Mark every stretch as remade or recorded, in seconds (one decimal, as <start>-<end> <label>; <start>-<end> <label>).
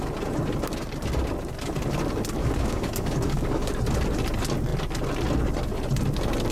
0.0-2.4 recorded; 2.4-3.7 remade; 3.7-6.5 recorded